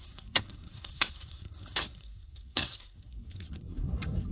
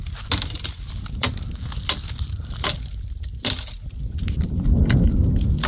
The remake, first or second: first